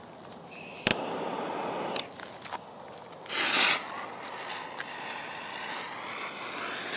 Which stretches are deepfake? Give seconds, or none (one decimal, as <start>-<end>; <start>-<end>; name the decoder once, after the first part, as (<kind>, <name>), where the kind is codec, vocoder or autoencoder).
none